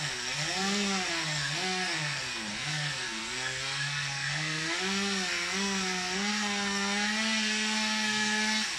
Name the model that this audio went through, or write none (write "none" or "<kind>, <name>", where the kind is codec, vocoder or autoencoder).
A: codec, SNAC